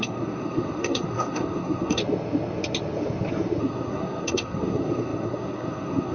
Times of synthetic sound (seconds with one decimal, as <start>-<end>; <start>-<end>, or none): 0.0-2.0; 3.6-6.1